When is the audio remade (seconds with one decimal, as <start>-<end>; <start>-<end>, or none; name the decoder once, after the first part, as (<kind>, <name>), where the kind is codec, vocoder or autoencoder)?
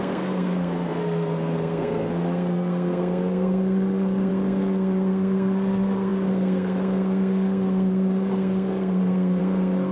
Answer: 0.0-9.9 (codec, SNAC)